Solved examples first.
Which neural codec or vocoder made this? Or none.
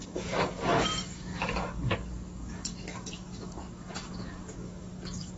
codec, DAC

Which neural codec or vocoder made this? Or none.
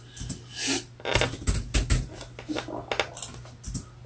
none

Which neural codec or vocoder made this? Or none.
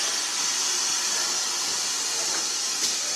none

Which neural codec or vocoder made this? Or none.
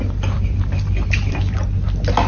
none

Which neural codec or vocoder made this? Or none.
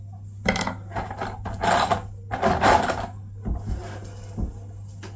none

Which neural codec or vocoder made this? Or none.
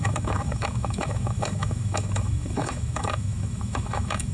autoencoder, DAC-VAE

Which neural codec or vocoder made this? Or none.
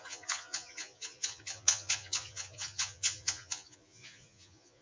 vocoder, Vocos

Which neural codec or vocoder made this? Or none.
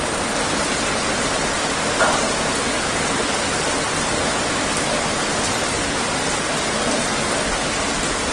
none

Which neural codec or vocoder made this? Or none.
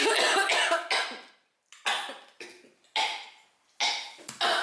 none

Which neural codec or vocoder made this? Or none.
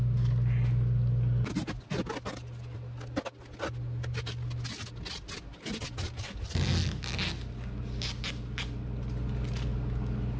none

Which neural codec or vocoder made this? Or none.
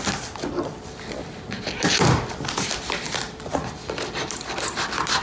vocoder, BigVGAN v2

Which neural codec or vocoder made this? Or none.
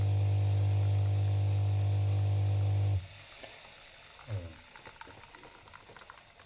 none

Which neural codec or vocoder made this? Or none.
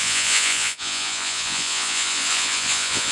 vocoder, Vocos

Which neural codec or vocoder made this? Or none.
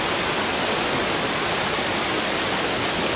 none